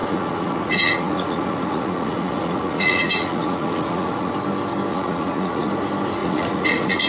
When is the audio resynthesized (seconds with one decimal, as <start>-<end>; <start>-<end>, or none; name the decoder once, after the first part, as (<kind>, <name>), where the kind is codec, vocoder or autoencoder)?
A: 0.0-4.3 (vocoder, Vocos); 4.9-5.7; 6.2-7.1

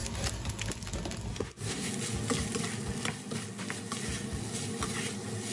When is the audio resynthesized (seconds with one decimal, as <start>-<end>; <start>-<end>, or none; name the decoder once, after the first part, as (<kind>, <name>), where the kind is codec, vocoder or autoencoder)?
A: 1.3-1.9 (codec, SNAC)

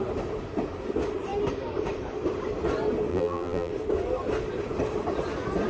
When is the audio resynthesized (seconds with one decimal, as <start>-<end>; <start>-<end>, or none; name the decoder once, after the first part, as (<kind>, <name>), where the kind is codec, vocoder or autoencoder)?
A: 3.1-3.7 (vocoder, BigVGAN v2)

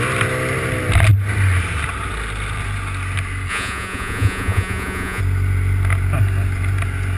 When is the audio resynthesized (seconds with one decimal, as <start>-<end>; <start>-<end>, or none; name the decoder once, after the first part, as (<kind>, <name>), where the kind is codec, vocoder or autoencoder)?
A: 3.5-5.2 (vocoder, Vocos)

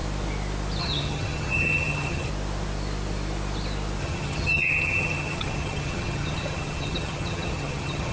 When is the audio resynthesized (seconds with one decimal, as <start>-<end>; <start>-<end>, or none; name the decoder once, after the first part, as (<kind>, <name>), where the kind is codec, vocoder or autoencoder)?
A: 0.8-2.3 (vocoder, HiFi-GAN); 4.0-8.1

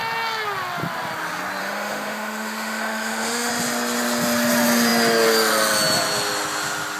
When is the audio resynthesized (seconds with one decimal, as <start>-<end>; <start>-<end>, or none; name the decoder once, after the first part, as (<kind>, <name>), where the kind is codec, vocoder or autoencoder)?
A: 1.6-3.5 (autoencoder, DAC-VAE)